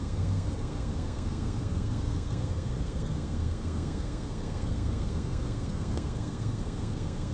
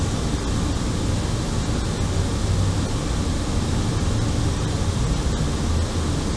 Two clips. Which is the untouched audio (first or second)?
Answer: second